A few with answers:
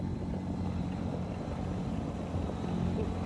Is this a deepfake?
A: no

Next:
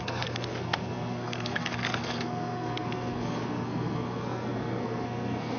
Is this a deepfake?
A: yes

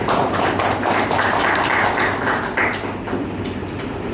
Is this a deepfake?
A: no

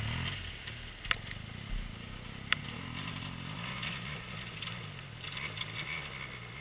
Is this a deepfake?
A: no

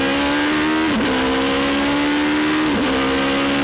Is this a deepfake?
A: no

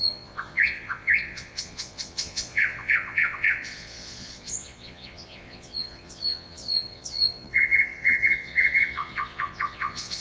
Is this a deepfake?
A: yes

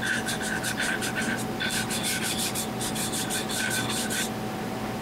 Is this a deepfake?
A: no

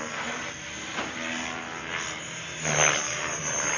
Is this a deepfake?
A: no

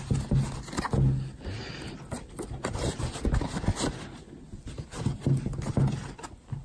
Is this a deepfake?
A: no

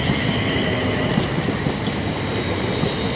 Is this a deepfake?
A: no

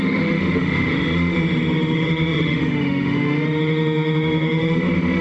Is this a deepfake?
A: yes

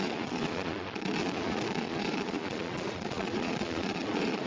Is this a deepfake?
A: yes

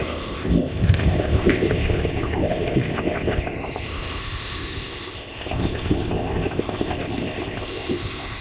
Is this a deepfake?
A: yes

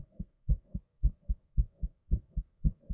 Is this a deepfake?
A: yes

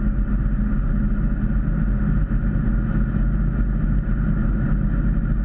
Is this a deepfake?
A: no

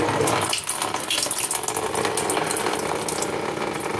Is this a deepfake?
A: no